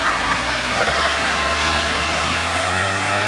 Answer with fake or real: fake